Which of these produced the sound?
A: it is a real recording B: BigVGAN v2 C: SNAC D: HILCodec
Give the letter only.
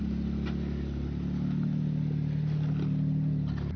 A